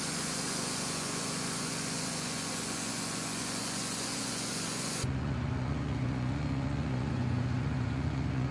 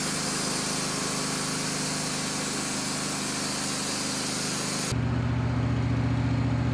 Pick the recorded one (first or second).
second